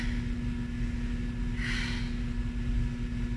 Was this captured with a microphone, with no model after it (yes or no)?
yes